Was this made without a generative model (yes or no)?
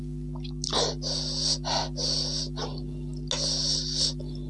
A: yes